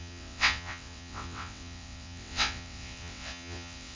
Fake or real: fake